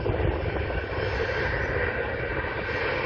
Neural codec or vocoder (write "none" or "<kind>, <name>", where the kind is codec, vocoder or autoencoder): none